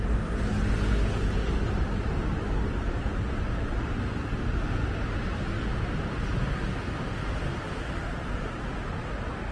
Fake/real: real